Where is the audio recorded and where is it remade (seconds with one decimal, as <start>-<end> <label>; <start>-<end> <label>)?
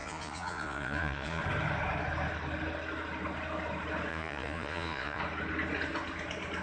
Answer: 0.0-1.4 remade; 1.4-4.1 recorded; 4.1-5.2 remade; 5.2-6.6 recorded